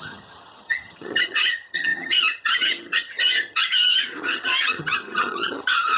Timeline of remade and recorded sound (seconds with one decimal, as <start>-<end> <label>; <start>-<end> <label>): 0.0-6.0 remade